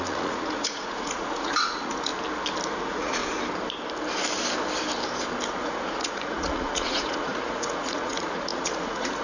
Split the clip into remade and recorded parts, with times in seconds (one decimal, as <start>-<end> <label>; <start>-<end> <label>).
0.0-2.1 remade; 2.1-2.8 recorded; 2.8-3.2 remade; 3.2-5.5 recorded; 5.5-9.2 remade